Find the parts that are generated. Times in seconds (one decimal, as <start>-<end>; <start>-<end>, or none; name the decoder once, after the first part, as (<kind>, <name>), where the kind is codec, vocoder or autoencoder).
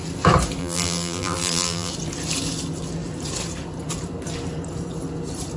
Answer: 0.6-1.9 (vocoder, BigVGAN v2)